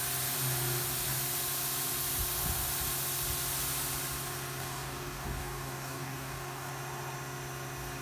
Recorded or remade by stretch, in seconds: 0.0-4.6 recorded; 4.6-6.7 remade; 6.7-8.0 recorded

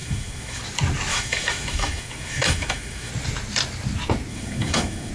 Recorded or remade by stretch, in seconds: 0.0-0.6 remade; 0.6-1.1 recorded; 1.1-3.1 remade; 3.1-4.3 recorded; 4.3-5.1 remade